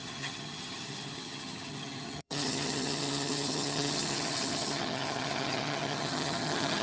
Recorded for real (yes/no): no